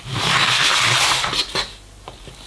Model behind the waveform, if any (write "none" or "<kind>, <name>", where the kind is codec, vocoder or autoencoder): none